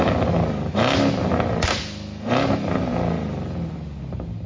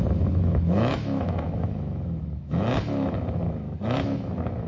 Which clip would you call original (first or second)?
first